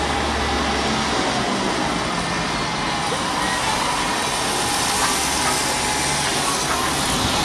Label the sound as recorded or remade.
recorded